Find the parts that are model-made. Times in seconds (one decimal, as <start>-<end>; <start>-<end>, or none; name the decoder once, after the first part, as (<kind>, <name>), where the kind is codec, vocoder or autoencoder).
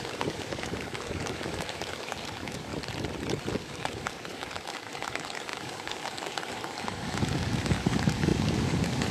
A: 0.0-2.7 (codec, DAC); 3.5-9.1